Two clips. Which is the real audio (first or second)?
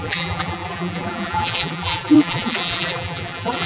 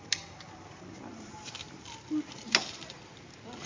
second